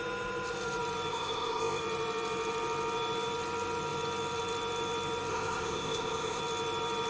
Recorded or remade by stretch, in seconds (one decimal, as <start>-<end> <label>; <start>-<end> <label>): 0.0-1.1 recorded; 1.1-1.8 remade; 1.8-5.3 recorded; 5.3-6.4 remade; 6.4-7.1 recorded